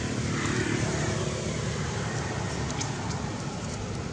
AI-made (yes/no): no